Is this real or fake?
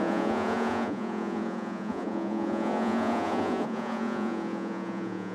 fake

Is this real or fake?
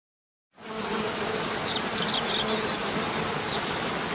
real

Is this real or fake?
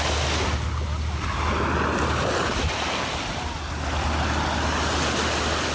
real